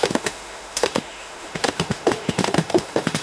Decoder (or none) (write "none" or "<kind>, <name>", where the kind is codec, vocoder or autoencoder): autoencoder, DAC-VAE